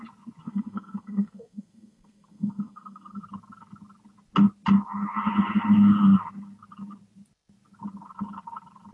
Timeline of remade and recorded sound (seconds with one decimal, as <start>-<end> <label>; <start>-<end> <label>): 0.0-0.4 recorded; 0.4-3.2 remade; 3.2-8.9 recorded

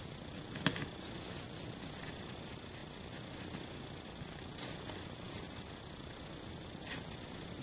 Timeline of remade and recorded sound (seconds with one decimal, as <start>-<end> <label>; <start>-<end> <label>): 0.0-7.6 recorded

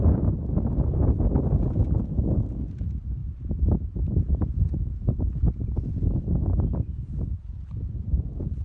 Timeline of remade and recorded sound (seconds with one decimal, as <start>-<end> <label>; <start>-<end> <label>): 0.0-8.6 recorded

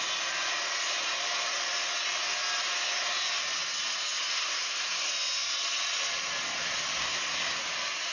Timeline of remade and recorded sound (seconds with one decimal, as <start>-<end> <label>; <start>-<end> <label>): 0.0-4.3 recorded; 4.3-5.1 remade; 5.1-7.0 recorded; 7.0-7.6 remade; 7.6-8.1 recorded

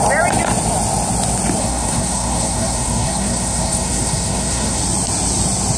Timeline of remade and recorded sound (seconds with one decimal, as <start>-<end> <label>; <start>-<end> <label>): 0.0-1.6 recorded; 1.6-4.8 remade; 4.8-5.8 recorded

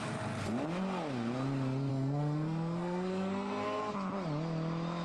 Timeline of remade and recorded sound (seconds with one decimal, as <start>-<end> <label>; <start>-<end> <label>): 0.0-1.9 recorded; 1.9-3.9 remade; 3.9-5.0 recorded

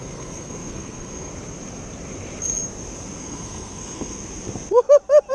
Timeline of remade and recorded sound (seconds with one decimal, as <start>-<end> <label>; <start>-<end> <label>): 0.0-1.3 remade; 1.3-3.2 recorded; 3.2-4.2 remade; 4.2-5.3 recorded